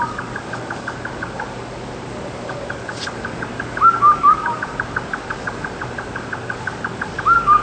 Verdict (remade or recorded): remade